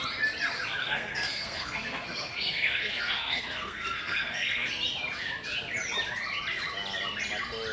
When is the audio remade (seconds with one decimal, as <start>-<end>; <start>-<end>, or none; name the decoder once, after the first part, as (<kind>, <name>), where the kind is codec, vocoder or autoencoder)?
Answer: 0.8-4.7 (codec, SNAC)